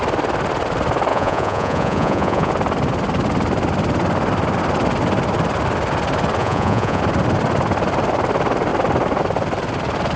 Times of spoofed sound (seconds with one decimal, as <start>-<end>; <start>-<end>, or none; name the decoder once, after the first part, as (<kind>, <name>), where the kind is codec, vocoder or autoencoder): 1.1-2.5 (vocoder, Vocos); 6.4-7.0